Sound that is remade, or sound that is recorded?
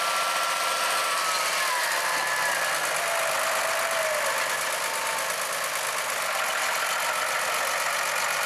recorded